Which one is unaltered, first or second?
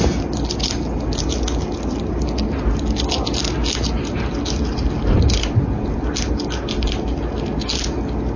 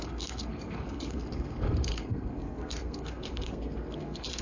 first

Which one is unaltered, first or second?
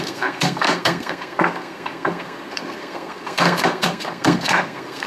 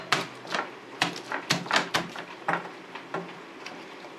second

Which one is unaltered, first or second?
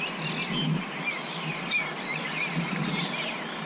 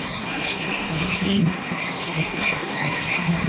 first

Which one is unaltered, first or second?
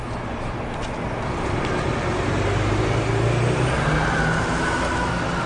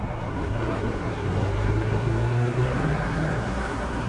first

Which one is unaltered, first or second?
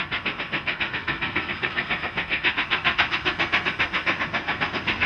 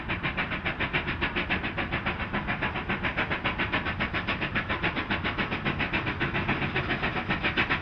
second